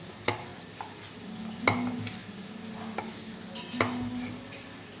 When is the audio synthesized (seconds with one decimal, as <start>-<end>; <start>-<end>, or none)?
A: none